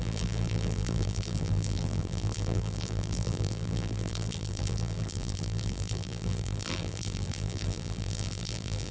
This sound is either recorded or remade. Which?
remade